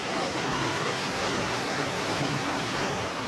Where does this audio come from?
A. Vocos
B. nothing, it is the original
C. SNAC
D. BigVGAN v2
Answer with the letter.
C